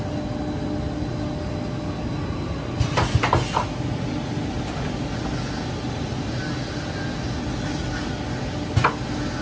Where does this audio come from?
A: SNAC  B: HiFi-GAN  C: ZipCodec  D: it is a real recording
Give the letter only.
D